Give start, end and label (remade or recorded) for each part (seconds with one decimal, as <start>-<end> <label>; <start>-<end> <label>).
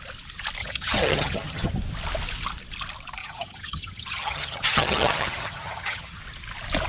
0.0-0.6 recorded; 0.6-1.7 remade; 1.7-3.2 recorded; 3.2-6.2 remade; 6.2-6.9 recorded